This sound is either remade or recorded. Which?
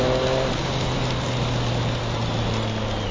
recorded